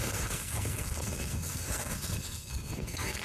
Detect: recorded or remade remade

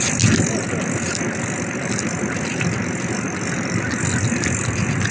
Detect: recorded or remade recorded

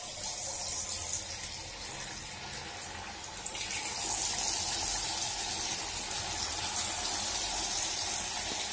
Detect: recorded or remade recorded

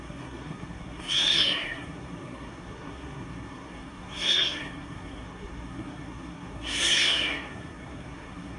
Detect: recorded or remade remade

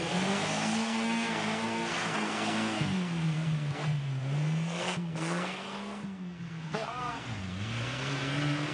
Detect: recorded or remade remade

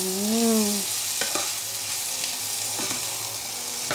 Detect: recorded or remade recorded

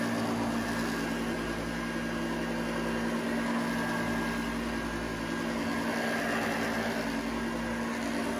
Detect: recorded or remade recorded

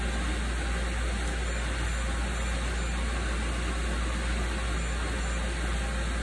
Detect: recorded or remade recorded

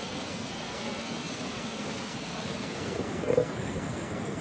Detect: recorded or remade remade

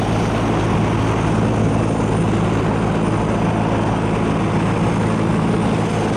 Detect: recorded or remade recorded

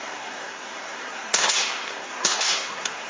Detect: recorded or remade remade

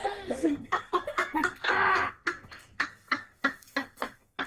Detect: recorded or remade remade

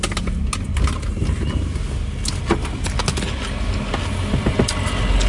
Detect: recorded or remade recorded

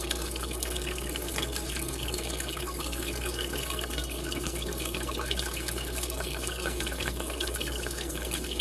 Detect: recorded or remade remade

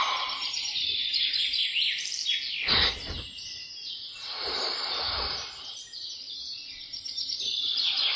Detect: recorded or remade recorded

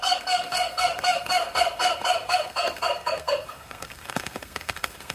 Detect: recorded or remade remade